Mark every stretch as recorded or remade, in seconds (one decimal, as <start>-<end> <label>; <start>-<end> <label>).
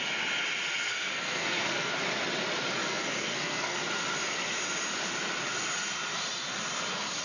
0.0-0.9 recorded; 0.9-1.9 remade; 1.9-2.8 recorded; 2.8-3.8 remade; 3.8-7.2 recorded